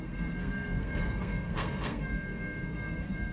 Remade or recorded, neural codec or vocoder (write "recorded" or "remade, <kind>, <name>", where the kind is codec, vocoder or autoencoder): remade, codec, SNAC